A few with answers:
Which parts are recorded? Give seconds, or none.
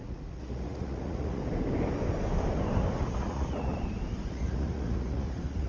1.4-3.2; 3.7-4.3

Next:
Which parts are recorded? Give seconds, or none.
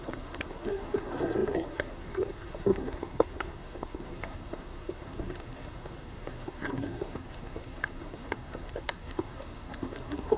none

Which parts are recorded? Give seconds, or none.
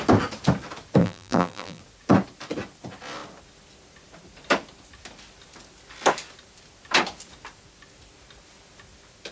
0.0-1.0; 1.8-9.3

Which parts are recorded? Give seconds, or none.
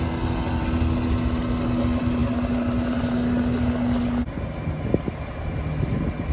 0.0-6.3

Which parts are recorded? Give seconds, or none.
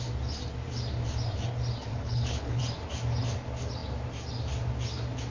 0.0-1.9; 2.6-5.3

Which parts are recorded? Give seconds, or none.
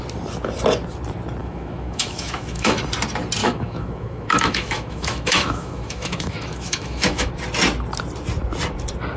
0.0-1.4; 2.8-3.4; 7.3-9.2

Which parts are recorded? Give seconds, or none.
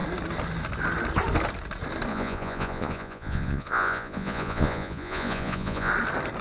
0.0-2.1; 5.9-6.4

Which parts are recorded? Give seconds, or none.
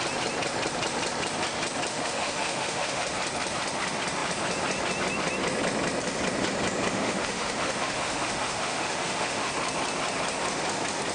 0.0-1.9; 3.0-6.9; 9.5-11.1